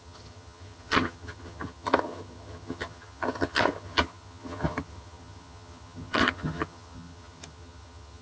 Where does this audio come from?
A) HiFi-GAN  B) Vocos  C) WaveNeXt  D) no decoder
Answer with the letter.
A